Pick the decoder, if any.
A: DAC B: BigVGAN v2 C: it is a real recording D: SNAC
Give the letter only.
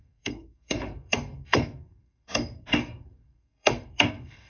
D